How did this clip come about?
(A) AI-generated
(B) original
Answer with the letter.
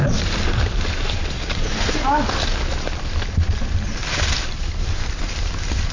A